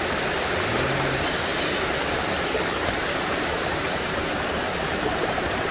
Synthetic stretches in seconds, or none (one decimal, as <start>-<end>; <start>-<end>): 2.8-4.3; 4.8-5.7

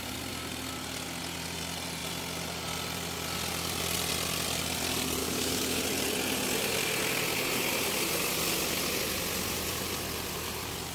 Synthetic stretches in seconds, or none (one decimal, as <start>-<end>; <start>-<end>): 5.2-5.8

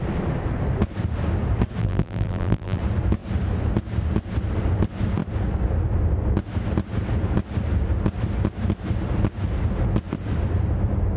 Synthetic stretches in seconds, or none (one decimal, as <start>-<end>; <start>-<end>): 1.8-2.8

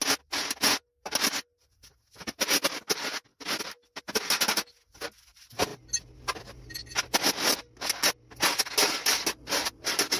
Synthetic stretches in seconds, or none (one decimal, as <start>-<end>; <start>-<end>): none

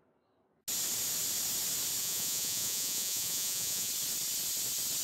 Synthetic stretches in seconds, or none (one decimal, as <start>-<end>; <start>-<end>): 2.0-3.9

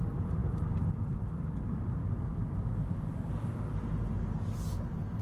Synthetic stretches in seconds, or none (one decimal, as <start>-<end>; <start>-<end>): none